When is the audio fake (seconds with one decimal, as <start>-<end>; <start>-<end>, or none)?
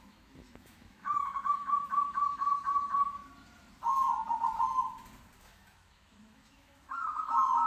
0.0-2.5; 5.4-7.7